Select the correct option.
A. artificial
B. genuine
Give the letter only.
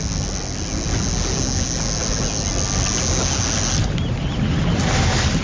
B